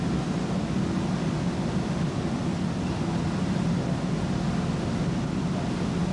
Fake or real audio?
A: real